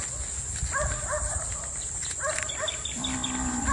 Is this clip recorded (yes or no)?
yes